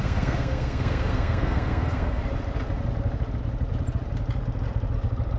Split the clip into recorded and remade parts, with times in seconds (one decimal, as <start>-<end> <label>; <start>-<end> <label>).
0.0-2.2 remade; 2.2-5.4 recorded